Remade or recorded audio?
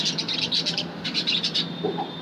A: recorded